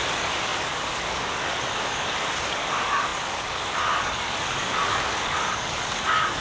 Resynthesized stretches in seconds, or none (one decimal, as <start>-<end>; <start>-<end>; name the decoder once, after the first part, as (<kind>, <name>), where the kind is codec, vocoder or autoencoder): 0.0-6.4 (codec, DAC)